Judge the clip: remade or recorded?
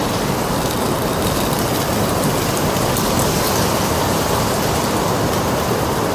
remade